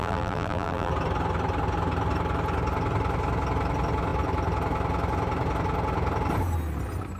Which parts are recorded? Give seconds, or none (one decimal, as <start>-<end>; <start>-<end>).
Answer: 0.9-7.2